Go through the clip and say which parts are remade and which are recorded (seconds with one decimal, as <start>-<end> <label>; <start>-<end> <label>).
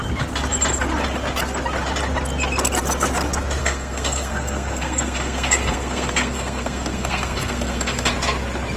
0.0-3.6 recorded; 3.6-8.1 remade; 8.1-8.8 recorded